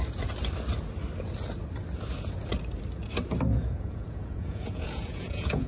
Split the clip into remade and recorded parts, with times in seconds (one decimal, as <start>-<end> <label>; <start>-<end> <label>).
0.0-3.5 recorded; 3.5-5.7 remade